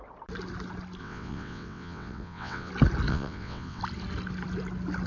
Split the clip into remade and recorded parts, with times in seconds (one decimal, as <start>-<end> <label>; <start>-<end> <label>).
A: 0.0-1.0 recorded; 1.0-2.7 remade; 2.7-3.1 recorded; 3.1-3.8 remade; 3.8-5.1 recorded